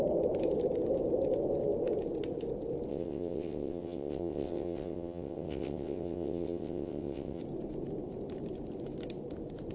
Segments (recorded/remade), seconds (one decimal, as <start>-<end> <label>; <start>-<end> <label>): 0.0-2.9 recorded; 2.9-7.4 remade; 7.4-9.7 recorded